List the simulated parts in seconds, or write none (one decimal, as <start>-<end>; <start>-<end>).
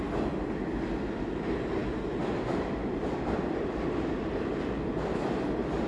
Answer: none